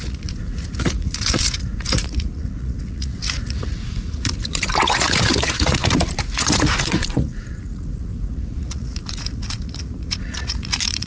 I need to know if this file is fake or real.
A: fake